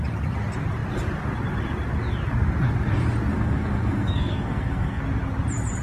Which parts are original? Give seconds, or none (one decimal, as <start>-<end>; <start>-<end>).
0.0-3.3; 5.0-5.8